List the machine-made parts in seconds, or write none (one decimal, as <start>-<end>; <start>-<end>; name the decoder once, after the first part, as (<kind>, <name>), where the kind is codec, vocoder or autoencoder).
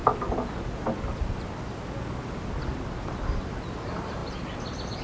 none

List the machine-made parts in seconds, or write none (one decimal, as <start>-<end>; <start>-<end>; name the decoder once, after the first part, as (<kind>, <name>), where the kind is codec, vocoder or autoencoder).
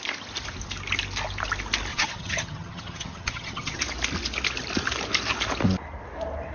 1.9-3.8 (vocoder, HiFi-GAN)